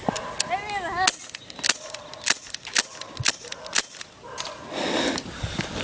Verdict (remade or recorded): recorded